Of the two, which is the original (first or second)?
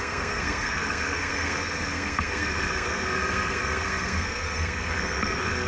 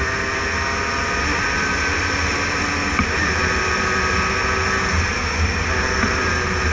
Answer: second